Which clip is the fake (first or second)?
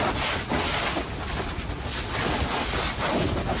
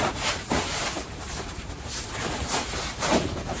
second